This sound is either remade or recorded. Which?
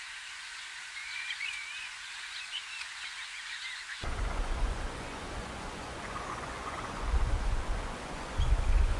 remade